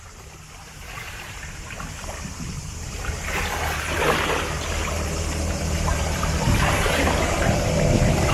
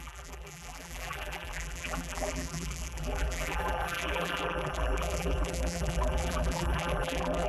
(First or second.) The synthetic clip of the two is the second